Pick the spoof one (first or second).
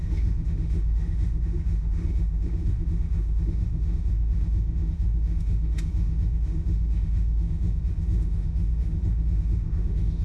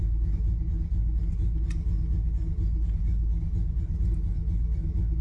first